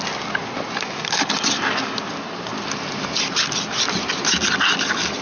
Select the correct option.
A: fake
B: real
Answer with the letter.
B